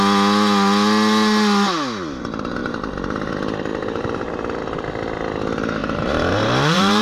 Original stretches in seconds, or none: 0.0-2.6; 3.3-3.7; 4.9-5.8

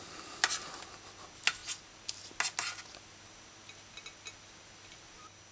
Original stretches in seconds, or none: 0.0-5.5

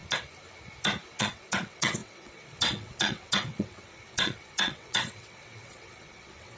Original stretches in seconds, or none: 0.0-1.2